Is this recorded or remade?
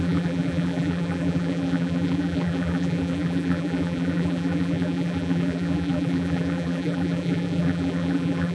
remade